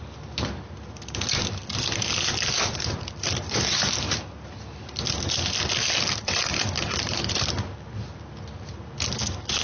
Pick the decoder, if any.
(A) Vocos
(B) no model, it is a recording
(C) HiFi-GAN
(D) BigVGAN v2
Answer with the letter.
B